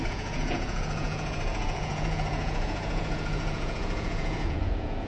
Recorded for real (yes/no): no